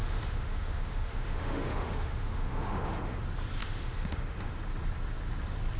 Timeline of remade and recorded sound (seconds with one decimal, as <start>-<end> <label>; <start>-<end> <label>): 0.0-3.2 remade; 3.2-3.6 recorded; 3.6-4.5 remade; 4.5-5.8 recorded